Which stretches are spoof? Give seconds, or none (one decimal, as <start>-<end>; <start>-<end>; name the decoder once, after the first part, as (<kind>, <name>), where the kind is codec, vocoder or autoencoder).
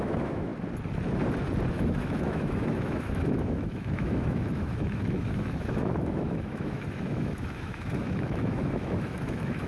0.0-0.5 (autoencoder, DAC-VAE); 1.7-9.7